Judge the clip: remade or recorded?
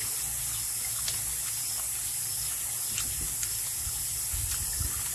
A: recorded